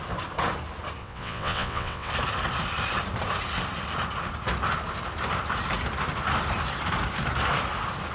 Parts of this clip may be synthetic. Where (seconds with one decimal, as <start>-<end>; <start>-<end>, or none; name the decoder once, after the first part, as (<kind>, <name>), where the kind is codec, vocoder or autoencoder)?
1.0-2.1 (vocoder, WaveNeXt)